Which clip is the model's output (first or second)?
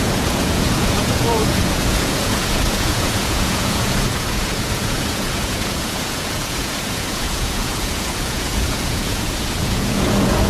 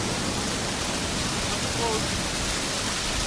first